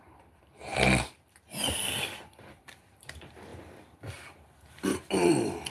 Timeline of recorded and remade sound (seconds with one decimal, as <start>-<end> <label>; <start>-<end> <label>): 0.0-0.7 remade; 0.7-2.5 recorded; 2.5-3.5 remade; 3.5-4.7 recorded; 4.7-5.7 remade